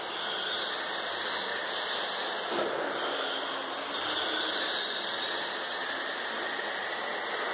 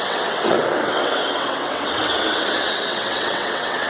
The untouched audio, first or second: first